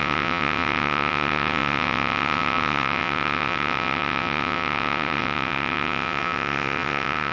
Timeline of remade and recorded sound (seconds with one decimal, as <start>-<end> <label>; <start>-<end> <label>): 0.0-7.3 remade

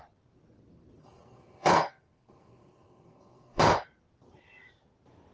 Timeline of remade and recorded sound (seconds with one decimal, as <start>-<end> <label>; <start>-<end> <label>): 0.0-1.0 recorded; 1.0-3.6 remade; 3.6-5.3 recorded

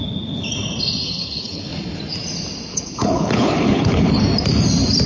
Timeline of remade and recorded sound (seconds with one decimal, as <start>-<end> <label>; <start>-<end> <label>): 0.0-1.0 recorded; 1.0-1.6 remade; 1.6-2.7 recorded; 2.7-4.2 remade; 4.2-5.1 recorded

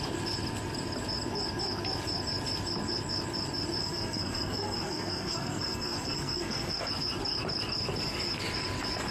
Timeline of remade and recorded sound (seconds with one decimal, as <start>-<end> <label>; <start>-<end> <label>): 0.0-3.8 recorded; 3.8-6.9 remade; 6.9-9.1 recorded

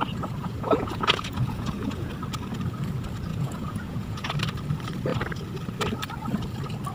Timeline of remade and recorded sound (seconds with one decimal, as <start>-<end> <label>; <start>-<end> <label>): 0.0-0.4 recorded; 0.4-2.1 remade; 2.1-3.3 recorded; 3.3-4.3 remade; 4.3-6.9 recorded

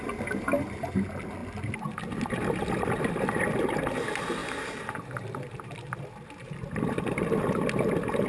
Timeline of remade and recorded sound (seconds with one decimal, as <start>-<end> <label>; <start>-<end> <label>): 0.0-8.3 recorded